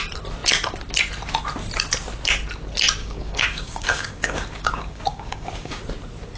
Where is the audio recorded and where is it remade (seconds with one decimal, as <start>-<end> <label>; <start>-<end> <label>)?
0.0-3.0 recorded; 3.0-5.8 remade; 5.8-6.4 recorded